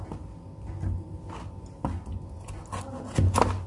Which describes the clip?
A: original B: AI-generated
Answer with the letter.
A